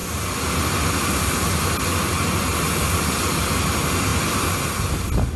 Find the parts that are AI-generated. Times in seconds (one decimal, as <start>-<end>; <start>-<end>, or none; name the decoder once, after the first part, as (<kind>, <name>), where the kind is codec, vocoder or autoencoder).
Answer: none